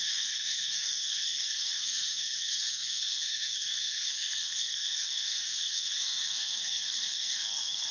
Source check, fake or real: fake